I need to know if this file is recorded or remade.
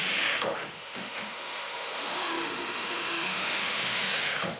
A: remade